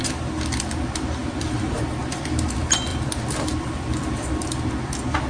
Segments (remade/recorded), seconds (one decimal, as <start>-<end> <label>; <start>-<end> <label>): 0.0-1.2 recorded; 1.2-1.8 remade; 1.8-2.9 recorded; 2.9-4.7 remade; 4.7-5.3 recorded